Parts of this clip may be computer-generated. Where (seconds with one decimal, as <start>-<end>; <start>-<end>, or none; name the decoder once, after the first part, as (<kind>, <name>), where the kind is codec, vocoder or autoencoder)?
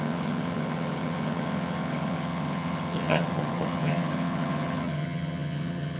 0.0-6.0 (vocoder, HiFi-GAN)